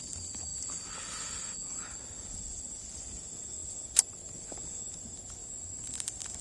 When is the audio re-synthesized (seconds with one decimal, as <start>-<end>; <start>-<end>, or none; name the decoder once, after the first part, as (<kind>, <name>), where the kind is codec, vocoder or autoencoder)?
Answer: none